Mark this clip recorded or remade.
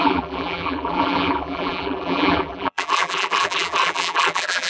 remade